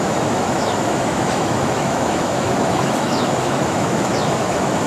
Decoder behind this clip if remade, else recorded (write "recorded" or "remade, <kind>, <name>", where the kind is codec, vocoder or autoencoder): remade, autoencoder, DAC-VAE